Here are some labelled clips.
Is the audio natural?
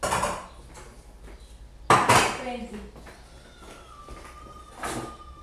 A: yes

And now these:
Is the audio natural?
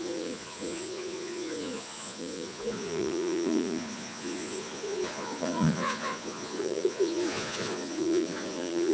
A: no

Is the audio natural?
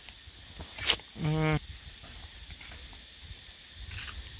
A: yes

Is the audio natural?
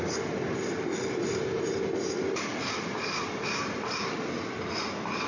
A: yes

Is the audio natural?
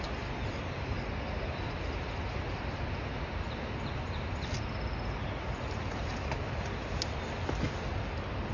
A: yes